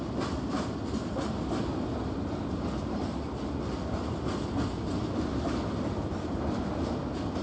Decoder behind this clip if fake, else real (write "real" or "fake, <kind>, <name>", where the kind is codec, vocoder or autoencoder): real